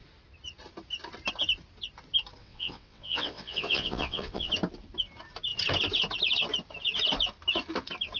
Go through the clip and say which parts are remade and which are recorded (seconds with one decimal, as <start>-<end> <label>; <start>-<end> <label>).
0.0-2.4 recorded; 2.4-4.5 remade; 4.5-8.2 recorded